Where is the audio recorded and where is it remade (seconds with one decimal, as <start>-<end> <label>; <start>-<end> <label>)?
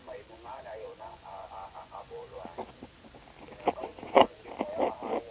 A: 0.0-2.4 remade; 2.4-3.8 recorded; 3.8-4.5 remade; 4.5-5.3 recorded